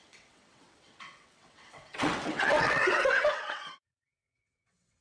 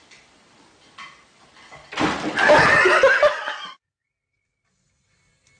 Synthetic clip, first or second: first